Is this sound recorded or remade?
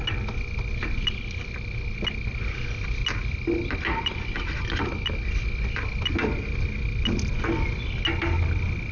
recorded